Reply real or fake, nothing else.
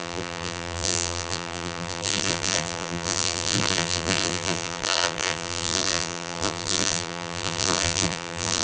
fake